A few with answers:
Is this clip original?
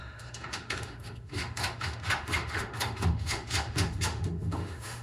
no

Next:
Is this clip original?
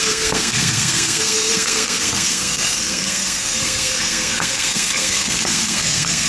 no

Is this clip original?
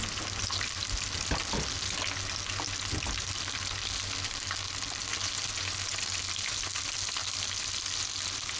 yes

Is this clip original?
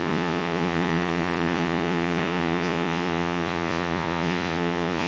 no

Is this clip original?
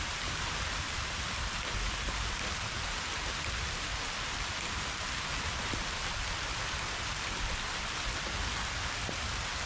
yes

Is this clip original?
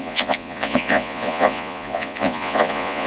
no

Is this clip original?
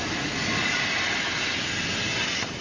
yes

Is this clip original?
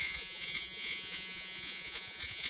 no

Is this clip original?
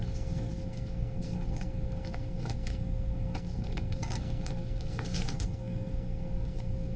no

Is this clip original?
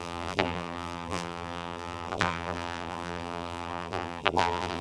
no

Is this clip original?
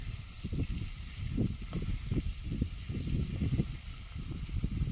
yes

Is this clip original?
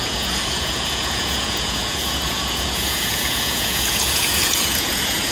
no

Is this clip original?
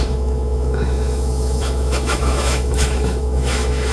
no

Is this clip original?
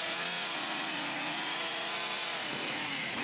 no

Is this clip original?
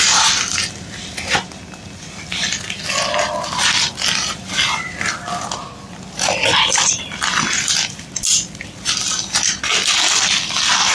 yes